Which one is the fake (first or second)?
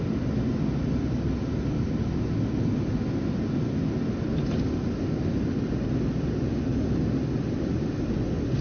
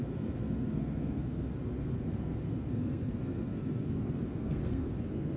second